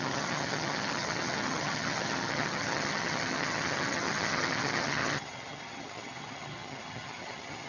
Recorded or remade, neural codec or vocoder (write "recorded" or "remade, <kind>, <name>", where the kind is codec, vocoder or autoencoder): remade, vocoder, HiFi-GAN